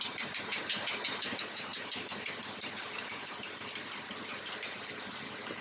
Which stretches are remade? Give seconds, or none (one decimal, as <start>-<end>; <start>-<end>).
none